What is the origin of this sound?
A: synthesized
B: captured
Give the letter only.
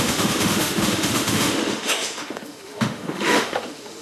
A